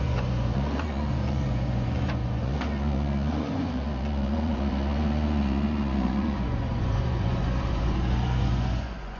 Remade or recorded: remade